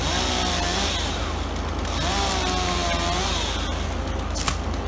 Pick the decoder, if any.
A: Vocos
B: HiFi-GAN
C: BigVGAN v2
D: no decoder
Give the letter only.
D